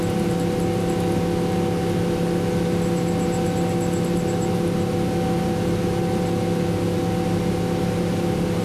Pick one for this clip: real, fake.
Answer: real